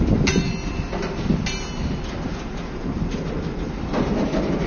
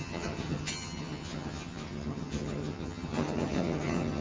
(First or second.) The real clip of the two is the first